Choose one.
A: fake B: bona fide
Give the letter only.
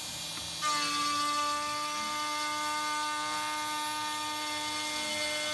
B